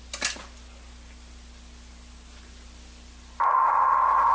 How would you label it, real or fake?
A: real